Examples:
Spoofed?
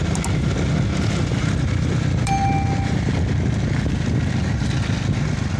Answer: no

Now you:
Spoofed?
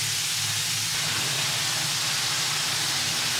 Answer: no